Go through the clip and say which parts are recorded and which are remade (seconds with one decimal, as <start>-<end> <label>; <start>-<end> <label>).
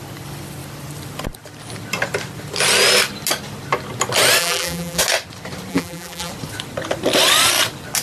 0.0-4.4 recorded; 4.4-5.0 remade; 5.0-5.7 recorded; 5.7-6.3 remade; 6.3-8.0 recorded